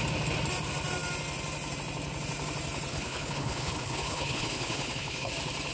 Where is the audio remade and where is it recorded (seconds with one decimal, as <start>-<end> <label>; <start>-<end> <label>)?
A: 0.0-2.9 recorded; 2.9-5.3 remade; 5.3-5.7 recorded